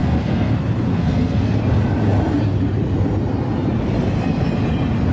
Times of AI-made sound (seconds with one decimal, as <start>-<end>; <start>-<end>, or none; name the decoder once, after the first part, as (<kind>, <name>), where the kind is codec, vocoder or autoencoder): 0.0-0.5 (codec, SNAC); 0.9-1.6